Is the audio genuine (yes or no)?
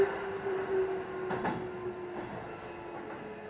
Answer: yes